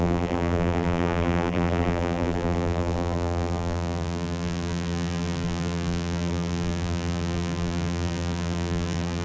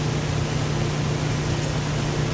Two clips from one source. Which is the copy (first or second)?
first